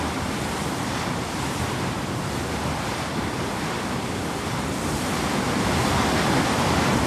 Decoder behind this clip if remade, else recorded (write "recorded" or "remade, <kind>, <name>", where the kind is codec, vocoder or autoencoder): remade, vocoder, BigVGAN v2